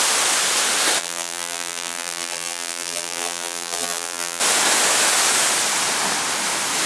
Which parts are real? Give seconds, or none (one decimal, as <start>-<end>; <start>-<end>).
0.0-1.0; 4.4-6.9